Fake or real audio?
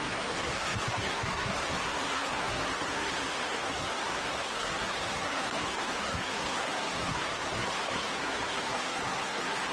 fake